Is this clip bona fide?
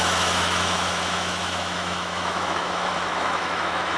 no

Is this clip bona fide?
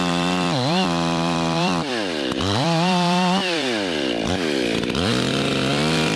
no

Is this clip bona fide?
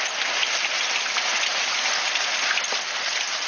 yes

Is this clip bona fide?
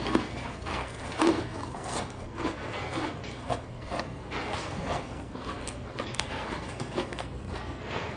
no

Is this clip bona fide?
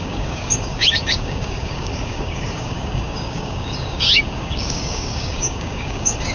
no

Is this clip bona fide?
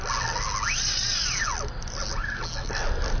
yes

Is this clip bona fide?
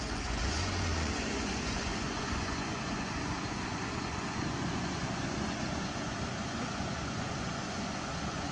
no